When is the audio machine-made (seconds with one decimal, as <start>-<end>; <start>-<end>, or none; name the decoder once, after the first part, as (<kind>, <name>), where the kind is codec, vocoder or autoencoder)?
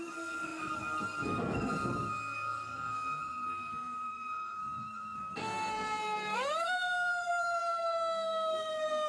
0.0-9.1 (codec, SNAC)